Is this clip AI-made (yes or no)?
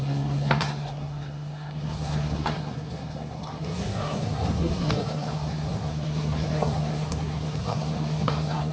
yes